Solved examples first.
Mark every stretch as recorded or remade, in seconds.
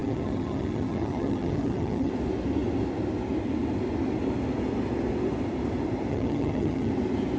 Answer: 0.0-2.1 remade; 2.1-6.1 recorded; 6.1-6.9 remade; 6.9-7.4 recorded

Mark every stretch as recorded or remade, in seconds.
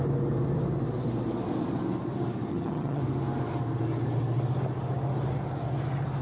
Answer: 0.0-2.5 recorded; 2.5-3.0 remade; 3.0-6.2 recorded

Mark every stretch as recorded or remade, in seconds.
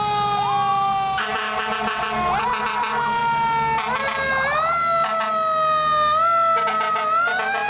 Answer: 0.0-7.7 recorded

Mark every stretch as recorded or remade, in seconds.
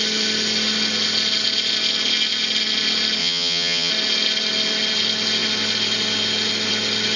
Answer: 0.0-3.2 recorded; 3.2-3.9 remade; 3.9-7.2 recorded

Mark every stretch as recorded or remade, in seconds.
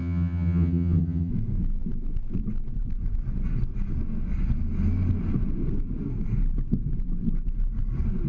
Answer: 0.0-1.3 remade; 1.3-8.3 recorded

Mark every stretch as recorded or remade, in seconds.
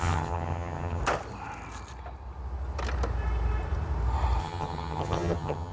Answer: 0.0-1.0 remade; 1.0-4.4 recorded; 4.4-5.7 remade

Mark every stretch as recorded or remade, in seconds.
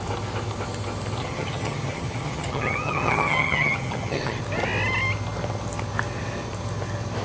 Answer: 0.0-1.2 recorded; 1.2-4.4 remade; 4.4-7.2 recorded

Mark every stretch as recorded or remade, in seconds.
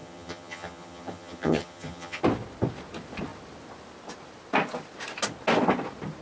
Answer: 0.0-2.2 remade; 2.2-6.2 recorded